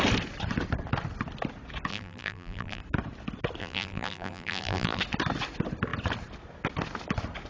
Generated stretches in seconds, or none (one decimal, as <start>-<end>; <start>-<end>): 1.9-2.8; 3.6-5.0